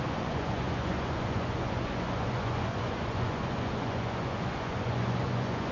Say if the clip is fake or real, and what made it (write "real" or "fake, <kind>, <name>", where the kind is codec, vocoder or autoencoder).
fake, vocoder, Vocos